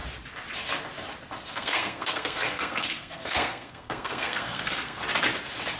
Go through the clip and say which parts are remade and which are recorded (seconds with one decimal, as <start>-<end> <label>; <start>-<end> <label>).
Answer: 0.0-1.5 recorded; 1.5-5.0 remade; 5.0-5.8 recorded